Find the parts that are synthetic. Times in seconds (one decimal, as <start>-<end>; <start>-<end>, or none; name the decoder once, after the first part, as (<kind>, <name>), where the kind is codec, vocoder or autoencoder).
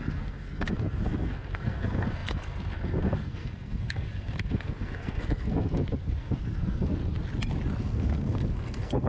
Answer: 0.0-7.0 (codec, SNAC); 7.8-9.1